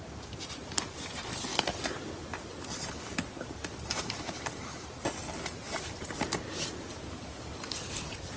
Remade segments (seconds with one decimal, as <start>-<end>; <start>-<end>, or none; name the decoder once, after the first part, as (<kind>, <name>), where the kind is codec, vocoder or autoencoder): none